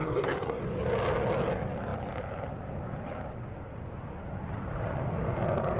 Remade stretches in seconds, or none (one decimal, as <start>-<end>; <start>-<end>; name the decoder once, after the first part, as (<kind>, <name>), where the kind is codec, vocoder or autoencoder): 0.0-0.6 (codec, SNAC)